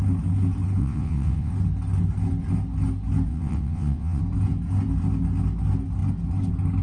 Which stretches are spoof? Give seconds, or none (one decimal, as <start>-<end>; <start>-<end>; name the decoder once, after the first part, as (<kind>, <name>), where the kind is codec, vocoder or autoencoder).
0.8-1.5 (vocoder, WaveNeXt); 3.3-4.2